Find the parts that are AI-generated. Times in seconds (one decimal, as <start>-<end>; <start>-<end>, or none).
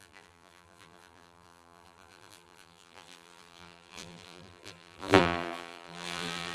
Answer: 0.0-6.5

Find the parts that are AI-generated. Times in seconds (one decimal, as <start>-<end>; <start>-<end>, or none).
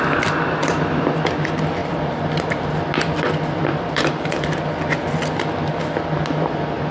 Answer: 1.8-2.7; 3.7-4.3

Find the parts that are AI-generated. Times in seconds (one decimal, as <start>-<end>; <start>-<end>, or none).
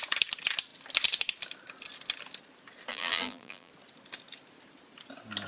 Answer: 2.9-3.7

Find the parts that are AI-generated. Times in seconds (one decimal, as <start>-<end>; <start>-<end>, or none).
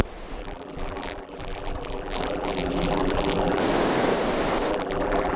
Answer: 0.4-3.6; 4.7-5.4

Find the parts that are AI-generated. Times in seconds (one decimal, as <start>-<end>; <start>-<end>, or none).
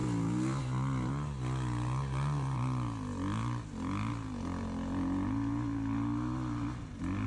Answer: none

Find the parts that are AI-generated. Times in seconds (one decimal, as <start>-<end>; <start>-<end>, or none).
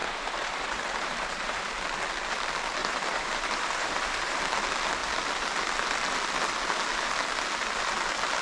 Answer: 0.0-1.7; 2.8-4.4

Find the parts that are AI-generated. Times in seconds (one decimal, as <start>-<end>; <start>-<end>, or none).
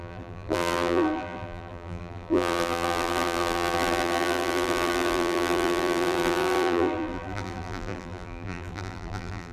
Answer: 0.0-9.5